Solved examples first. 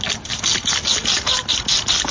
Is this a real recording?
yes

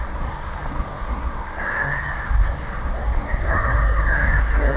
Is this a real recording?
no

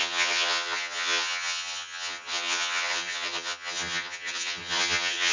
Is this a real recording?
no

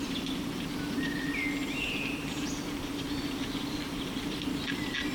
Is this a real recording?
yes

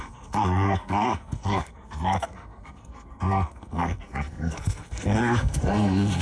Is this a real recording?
no